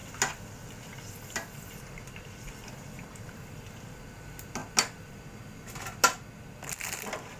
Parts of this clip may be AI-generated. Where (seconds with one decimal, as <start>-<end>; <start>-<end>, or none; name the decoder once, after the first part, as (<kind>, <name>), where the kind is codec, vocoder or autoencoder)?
none

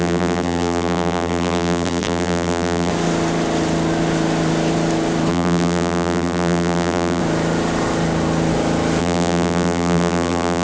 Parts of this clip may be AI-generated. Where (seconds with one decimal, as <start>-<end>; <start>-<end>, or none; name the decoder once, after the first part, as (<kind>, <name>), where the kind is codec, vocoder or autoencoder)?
0.0-2.9 (vocoder, BigVGAN v2); 5.3-7.2; 9.0-10.6

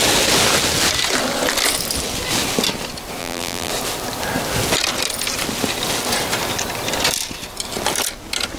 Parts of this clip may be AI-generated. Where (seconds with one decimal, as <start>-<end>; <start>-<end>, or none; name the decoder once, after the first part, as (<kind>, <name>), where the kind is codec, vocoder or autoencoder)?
3.2-3.7 (vocoder, BigVGAN v2)

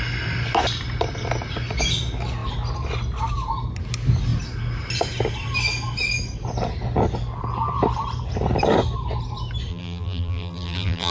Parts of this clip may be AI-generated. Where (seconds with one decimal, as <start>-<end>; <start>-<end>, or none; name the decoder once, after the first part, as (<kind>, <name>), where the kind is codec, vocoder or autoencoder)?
9.7-11.1 (vocoder, BigVGAN v2)

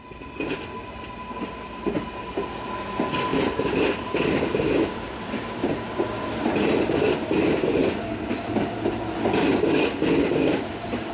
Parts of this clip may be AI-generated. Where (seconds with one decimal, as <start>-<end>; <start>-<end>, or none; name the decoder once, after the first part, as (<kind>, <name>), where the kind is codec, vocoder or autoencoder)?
3.3-7.1 (vocoder, BigVGAN v2); 7.8-8.6